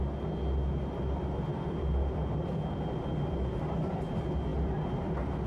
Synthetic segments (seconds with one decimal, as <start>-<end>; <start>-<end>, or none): 1.5-3.8; 4.5-5.5